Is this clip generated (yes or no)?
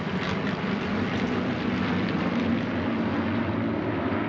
no